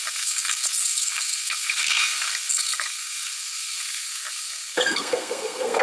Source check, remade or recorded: remade